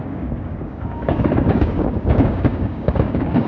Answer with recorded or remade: remade